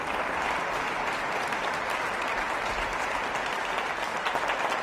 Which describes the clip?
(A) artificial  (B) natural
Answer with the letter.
B